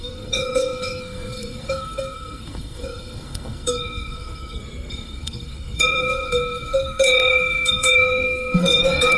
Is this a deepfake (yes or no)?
yes